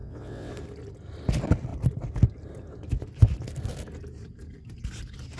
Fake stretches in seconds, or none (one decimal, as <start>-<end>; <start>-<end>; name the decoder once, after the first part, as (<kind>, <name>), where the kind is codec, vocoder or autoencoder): 0.0-0.5 (vocoder, WaveNeXt)